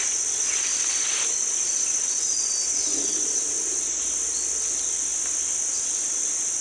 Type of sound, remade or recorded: recorded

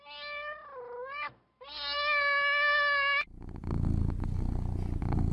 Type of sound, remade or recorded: recorded